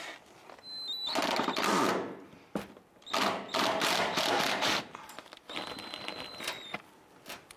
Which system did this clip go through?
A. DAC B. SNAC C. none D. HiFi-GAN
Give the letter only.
C